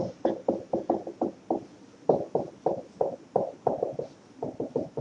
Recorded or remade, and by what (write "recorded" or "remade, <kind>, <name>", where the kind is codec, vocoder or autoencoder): recorded